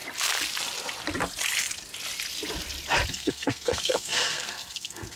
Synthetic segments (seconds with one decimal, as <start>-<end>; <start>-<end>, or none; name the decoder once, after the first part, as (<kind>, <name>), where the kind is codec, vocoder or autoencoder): 3.1-5.2 (codec, SNAC)